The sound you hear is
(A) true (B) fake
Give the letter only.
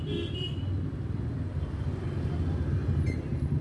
A